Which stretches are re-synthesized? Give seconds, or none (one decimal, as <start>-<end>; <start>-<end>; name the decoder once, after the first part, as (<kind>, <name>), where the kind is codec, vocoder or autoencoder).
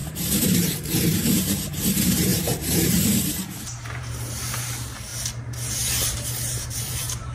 0.0-5.1 (vocoder, BigVGAN v2); 5.7-7.3